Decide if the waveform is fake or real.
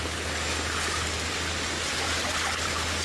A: real